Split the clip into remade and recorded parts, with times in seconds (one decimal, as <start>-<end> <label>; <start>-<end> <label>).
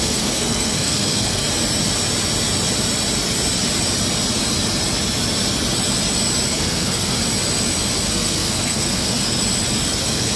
0.0-1.4 remade; 1.4-6.5 recorded; 6.5-7.2 remade; 7.2-8.1 recorded; 8.1-9.4 remade; 9.4-10.0 recorded; 10.0-10.4 remade